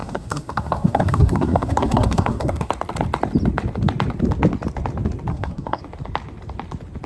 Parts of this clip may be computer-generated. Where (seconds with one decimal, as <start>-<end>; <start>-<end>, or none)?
0.0-2.7; 5.3-5.8